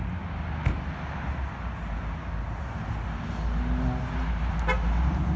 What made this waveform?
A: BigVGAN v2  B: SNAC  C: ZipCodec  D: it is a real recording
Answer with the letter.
D